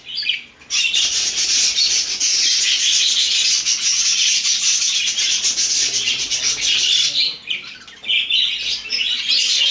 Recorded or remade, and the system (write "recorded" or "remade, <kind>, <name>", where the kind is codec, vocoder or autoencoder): recorded